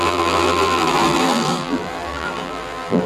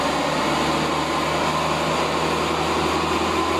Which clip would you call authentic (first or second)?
second